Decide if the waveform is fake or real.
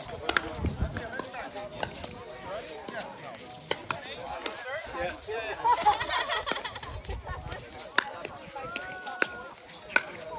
real